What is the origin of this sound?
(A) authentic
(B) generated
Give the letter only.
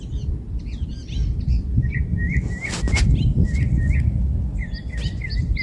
B